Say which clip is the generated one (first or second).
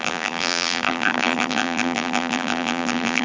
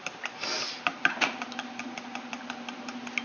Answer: first